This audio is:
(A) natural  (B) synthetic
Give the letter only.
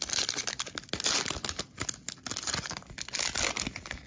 A